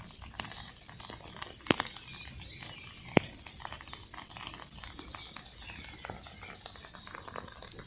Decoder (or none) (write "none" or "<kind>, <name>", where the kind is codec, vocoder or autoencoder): none